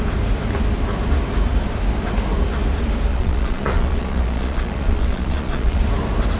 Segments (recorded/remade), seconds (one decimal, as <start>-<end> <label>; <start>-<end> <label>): 0.0-3.1 recorded; 3.1-5.8 remade; 5.8-6.4 recorded